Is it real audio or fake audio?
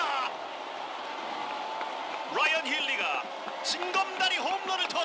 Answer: real